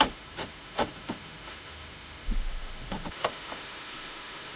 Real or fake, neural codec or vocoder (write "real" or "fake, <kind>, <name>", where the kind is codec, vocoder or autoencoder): fake, autoencoder, DAC-VAE